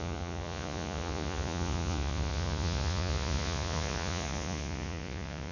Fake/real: fake